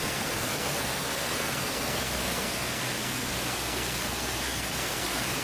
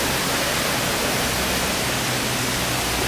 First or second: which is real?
second